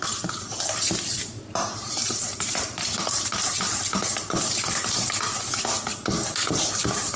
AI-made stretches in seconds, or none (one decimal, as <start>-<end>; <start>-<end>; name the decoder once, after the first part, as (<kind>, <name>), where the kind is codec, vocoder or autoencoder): 0.0-3.9 (vocoder, BigVGAN v2); 6.3-7.2